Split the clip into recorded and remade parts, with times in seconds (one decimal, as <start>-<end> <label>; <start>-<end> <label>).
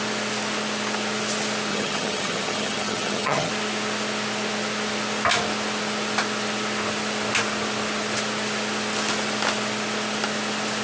0.0-1.7 recorded; 1.7-3.5 remade; 3.5-10.8 recorded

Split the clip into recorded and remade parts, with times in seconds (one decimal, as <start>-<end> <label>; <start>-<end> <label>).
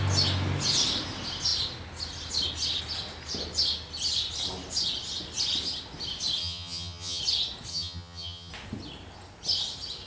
0.0-6.4 recorded; 6.4-7.2 remade; 7.2-7.7 recorded; 7.7-8.5 remade; 8.5-10.1 recorded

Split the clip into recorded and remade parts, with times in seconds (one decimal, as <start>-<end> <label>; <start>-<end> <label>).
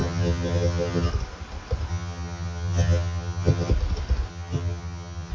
0.0-1.1 remade; 1.1-1.9 recorded; 1.9-3.7 remade; 3.7-4.3 recorded; 4.3-5.3 remade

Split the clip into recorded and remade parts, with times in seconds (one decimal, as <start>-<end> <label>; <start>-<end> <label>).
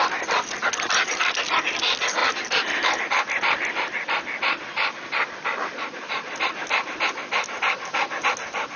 0.0-8.8 recorded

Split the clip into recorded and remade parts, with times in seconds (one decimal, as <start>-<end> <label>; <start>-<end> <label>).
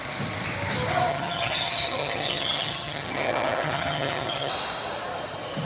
0.0-1.1 recorded; 1.1-4.5 remade; 4.5-5.6 recorded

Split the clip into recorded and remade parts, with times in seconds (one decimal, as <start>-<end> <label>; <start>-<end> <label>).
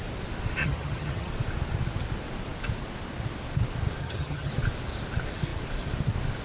0.0-0.6 recorded; 0.6-1.3 remade; 1.3-4.0 recorded; 4.0-4.5 remade; 4.5-6.4 recorded